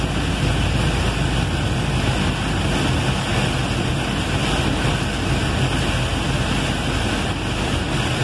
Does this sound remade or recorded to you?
recorded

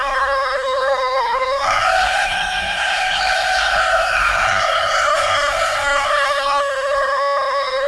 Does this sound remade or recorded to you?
remade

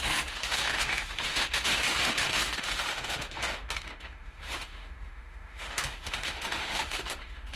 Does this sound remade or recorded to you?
remade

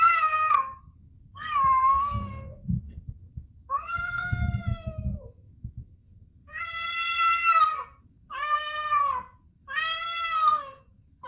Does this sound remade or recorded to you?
remade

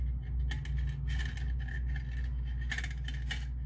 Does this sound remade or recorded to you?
recorded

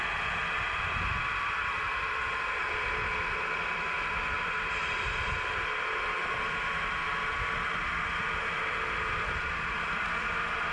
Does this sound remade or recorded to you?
recorded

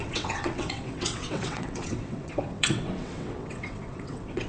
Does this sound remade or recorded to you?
remade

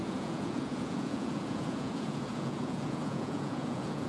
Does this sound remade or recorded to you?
remade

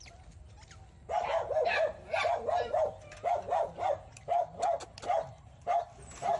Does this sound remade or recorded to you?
recorded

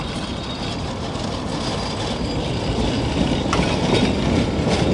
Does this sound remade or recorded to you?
recorded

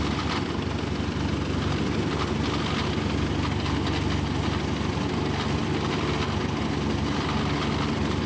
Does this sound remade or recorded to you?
recorded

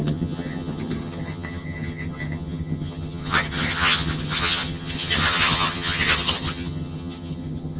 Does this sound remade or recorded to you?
remade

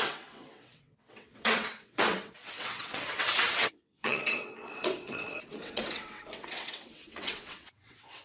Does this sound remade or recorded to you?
remade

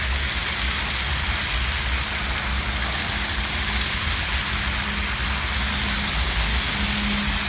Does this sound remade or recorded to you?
recorded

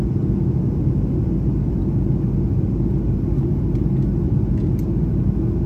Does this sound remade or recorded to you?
recorded